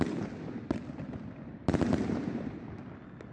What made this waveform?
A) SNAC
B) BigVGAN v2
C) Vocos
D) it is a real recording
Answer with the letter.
B